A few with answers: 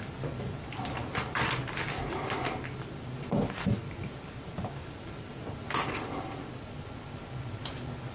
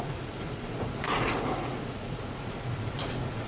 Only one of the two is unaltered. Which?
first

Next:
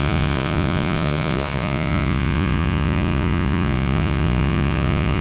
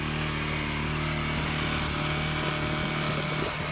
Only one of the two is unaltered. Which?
second